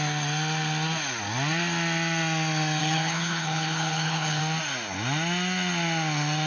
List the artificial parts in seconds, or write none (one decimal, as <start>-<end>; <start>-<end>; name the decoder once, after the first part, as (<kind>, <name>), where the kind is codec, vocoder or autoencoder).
2.8-4.4 (codec, HILCodec)

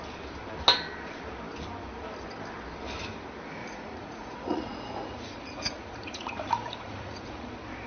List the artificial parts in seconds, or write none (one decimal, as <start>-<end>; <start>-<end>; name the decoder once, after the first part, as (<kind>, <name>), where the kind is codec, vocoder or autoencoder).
3.6-7.5 (vocoder, Vocos)

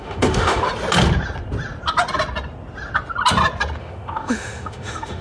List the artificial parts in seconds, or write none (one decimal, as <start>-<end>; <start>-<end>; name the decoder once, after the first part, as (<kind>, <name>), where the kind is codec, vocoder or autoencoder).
0.0-0.7 (autoencoder, DAC-VAE); 3.8-5.2

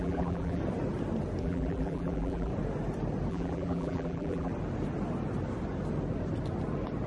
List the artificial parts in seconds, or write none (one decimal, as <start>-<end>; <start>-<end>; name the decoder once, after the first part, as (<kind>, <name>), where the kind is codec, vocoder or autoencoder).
0.0-0.6 (vocoder, BigVGAN v2); 1.4-2.5; 3.3-4.5

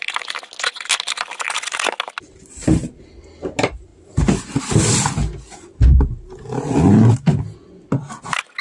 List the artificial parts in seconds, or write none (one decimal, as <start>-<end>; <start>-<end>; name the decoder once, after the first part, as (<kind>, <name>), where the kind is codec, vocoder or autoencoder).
none

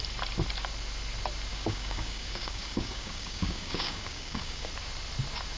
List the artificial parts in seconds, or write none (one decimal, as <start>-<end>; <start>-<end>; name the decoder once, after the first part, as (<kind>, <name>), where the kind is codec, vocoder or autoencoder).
1.5-4.7 (codec, DAC)

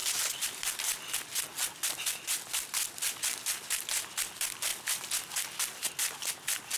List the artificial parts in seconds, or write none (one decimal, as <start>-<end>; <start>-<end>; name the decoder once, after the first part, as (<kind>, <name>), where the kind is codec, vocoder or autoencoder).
none

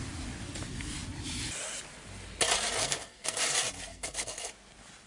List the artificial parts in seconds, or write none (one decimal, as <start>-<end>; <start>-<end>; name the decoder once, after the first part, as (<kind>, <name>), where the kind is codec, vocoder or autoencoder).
2.8-3.4 (codec, SNAC); 3.9-4.5